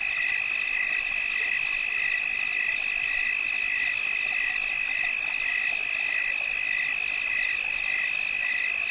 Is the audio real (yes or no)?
yes